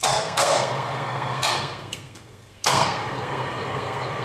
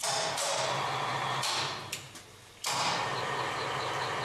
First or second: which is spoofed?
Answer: first